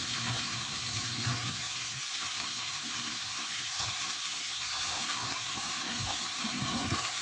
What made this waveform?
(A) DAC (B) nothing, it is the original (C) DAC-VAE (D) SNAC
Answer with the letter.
D